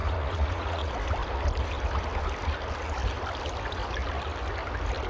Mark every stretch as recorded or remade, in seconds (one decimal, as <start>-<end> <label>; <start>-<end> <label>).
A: 0.0-0.9 remade; 0.9-5.1 recorded